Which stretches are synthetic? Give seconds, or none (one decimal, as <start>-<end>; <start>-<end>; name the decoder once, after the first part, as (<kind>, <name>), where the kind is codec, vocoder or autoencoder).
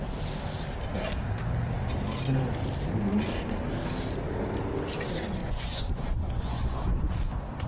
5.4-7.1 (vocoder, Vocos)